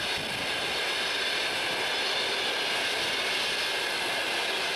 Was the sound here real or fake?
real